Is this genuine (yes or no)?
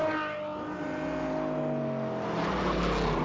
yes